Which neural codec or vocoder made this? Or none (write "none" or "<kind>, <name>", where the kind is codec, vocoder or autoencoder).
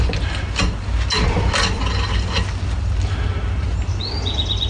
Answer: none